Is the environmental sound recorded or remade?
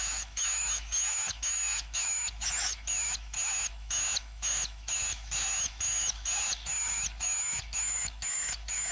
remade